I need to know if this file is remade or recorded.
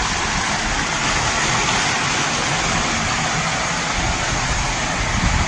recorded